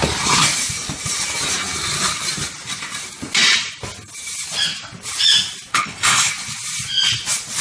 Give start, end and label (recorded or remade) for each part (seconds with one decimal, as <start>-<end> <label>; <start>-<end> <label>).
0.0-5.7 recorded; 5.7-6.3 remade; 6.3-7.6 recorded